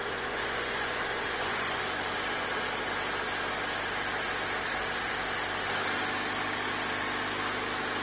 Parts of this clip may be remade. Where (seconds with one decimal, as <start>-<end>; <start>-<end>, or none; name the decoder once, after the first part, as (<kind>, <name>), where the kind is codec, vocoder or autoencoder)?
0.0-1.8 (vocoder, Vocos)